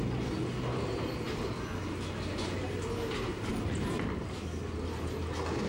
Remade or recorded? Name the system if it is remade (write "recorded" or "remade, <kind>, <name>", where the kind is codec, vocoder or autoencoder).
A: recorded